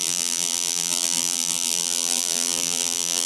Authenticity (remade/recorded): remade